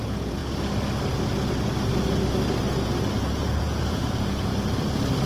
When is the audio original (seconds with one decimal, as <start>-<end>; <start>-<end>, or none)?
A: 0.4-3.6; 4.5-5.3